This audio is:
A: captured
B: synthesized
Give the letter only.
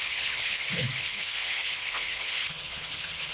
B